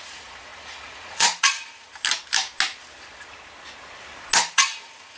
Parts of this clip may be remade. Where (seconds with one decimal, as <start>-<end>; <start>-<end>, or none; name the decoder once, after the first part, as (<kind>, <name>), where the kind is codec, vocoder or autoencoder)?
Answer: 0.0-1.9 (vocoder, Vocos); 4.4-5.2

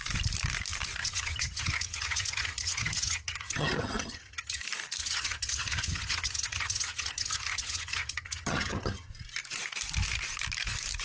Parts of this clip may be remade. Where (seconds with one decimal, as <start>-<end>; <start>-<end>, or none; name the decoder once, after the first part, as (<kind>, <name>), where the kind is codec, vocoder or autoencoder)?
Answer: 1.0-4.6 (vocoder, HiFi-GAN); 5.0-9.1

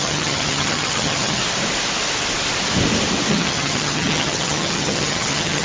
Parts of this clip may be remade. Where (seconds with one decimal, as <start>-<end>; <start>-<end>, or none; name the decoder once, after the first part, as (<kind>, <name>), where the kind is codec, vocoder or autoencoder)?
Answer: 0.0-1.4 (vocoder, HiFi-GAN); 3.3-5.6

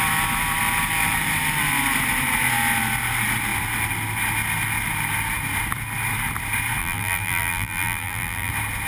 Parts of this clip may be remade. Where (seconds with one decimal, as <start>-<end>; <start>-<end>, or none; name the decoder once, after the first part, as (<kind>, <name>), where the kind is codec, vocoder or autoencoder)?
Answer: 6.8-8.5 (vocoder, BigVGAN v2)

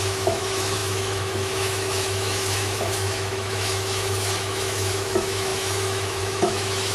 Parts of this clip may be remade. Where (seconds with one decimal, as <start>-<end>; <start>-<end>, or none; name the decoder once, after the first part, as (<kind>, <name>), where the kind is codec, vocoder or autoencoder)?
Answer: 0.0-6.9 (autoencoder, DAC-VAE)

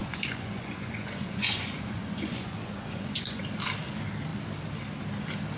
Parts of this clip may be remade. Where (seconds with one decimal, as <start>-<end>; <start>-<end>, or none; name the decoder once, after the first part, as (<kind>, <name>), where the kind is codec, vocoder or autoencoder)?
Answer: 0.0-3.4 (vocoder, Vocos)